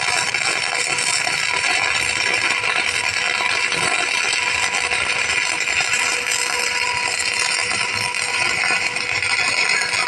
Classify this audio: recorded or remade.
recorded